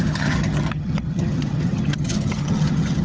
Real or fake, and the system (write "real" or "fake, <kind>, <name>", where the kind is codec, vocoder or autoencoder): fake, vocoder, HiFi-GAN